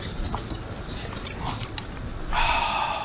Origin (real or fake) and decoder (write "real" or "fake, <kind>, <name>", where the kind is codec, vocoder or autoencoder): real